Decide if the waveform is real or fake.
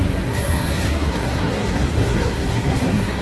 fake